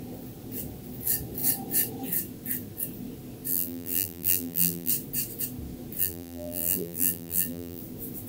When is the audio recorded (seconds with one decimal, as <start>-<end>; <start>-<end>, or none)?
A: 0.0-3.5; 4.9-6.0; 7.8-8.3